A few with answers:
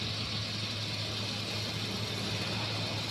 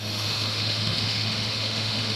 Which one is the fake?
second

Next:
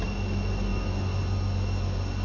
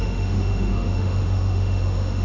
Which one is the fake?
second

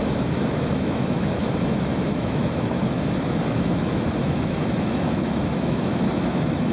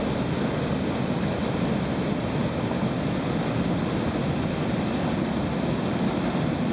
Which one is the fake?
first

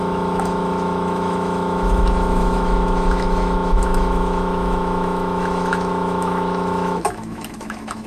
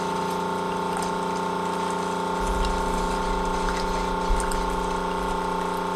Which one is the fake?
first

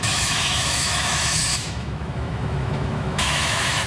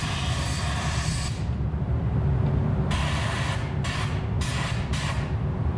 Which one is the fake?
first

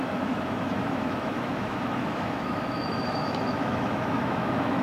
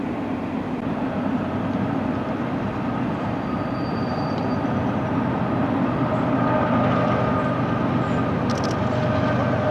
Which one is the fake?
first